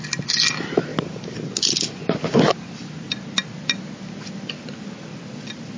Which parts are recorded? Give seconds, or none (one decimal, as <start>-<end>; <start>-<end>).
0.0-5.8